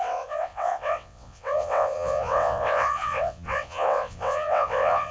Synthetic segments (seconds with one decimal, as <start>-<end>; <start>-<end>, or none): 0.0-5.1